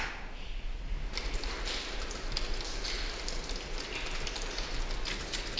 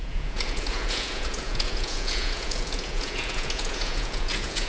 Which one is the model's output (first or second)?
second